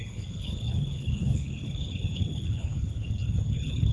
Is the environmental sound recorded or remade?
remade